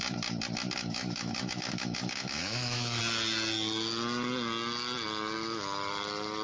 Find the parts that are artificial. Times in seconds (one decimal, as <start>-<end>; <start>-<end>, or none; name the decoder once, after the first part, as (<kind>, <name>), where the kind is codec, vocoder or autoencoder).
0.8-3.0 (autoencoder, DAC-VAE)